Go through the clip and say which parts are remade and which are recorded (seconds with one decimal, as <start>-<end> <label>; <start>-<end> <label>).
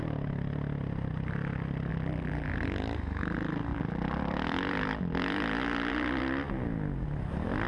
0.0-1.9 recorded; 1.9-2.5 remade; 2.5-3.7 recorded; 3.7-6.2 remade; 6.2-7.7 recorded